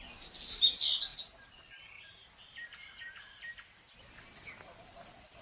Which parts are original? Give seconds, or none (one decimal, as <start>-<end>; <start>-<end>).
0.0-5.4